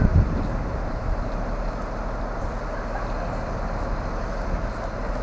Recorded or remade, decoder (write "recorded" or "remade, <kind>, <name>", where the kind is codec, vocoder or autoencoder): recorded